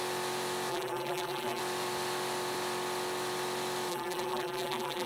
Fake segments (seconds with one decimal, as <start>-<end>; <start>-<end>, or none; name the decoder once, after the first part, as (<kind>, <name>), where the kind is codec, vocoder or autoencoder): 0.7-1.6 (vocoder, BigVGAN v2); 3.9-5.1